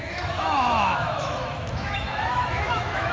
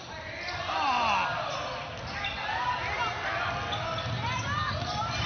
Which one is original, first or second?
second